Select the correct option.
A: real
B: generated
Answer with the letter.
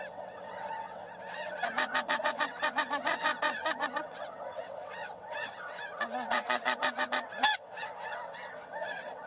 B